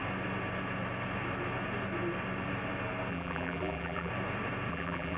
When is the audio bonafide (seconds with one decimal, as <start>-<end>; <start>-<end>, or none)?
0.0-3.1; 4.1-4.7